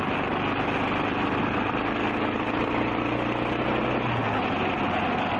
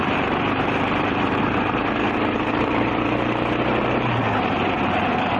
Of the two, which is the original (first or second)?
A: first